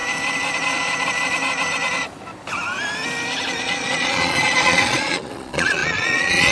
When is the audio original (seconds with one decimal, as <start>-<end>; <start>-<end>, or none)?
0.0-3.6